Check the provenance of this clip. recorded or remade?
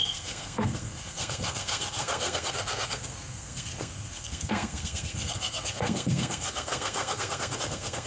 remade